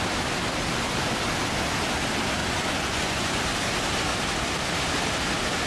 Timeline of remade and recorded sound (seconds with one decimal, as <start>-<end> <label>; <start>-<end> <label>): 0.0-2.4 recorded; 2.4-3.4 remade; 3.4-5.7 recorded